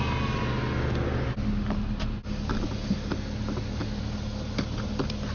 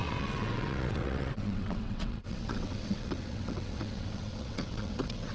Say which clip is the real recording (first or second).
first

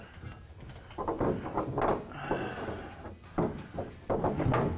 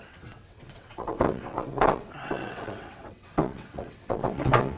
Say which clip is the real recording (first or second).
first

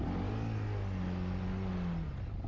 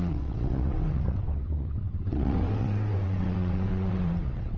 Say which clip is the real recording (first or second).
first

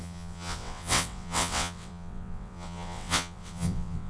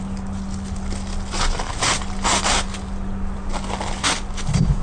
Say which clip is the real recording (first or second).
second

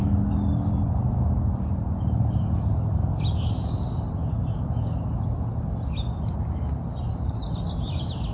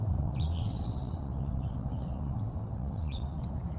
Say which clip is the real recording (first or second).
first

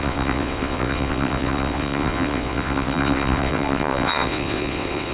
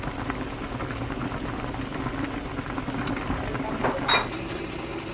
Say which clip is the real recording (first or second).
second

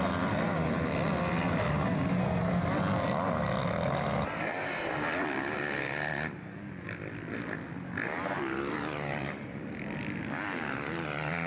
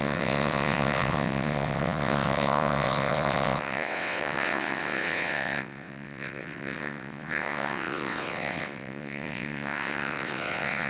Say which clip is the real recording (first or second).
first